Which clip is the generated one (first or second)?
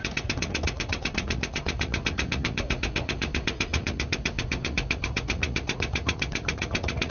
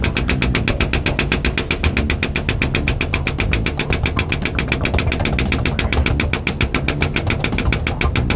first